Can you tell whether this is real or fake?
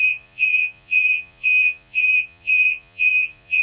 fake